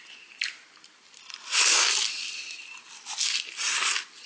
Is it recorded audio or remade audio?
recorded